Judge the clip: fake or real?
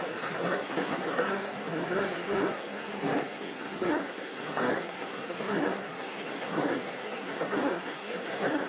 fake